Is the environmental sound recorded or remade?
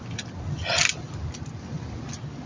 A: recorded